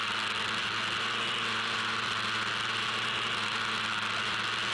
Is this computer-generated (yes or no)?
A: no